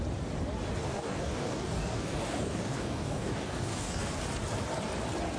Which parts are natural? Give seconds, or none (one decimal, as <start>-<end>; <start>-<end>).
0.0-0.9; 4.1-5.4